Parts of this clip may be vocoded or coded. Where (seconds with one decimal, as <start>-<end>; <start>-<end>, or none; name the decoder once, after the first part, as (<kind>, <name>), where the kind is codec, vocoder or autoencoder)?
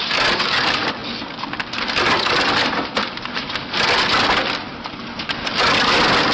none